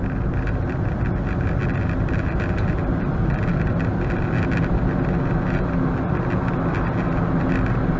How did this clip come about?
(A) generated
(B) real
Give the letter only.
B